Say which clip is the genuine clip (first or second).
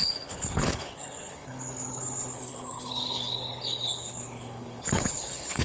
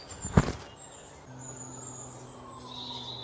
second